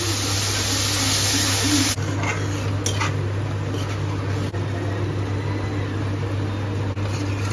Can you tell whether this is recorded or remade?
recorded